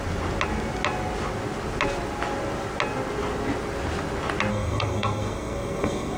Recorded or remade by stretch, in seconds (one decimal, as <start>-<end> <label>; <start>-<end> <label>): 0.0-4.5 recorded; 4.5-6.2 remade